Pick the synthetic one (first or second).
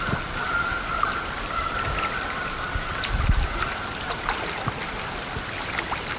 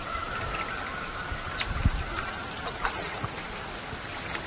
second